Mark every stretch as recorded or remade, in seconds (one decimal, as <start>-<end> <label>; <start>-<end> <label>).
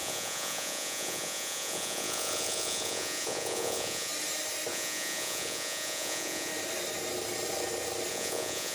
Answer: 0.0-4.1 remade; 4.1-4.7 recorded; 4.7-6.5 remade; 6.5-8.1 recorded; 8.1-8.7 remade